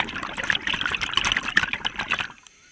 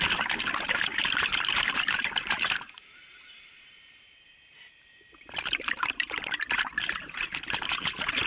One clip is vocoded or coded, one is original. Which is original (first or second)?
first